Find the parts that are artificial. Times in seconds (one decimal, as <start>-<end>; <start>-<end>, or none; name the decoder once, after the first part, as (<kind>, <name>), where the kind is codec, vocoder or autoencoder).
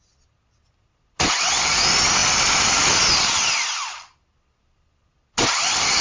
none